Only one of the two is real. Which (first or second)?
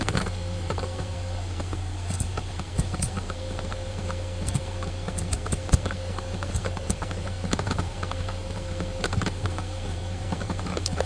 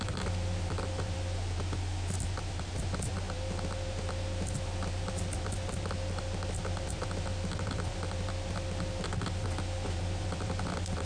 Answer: second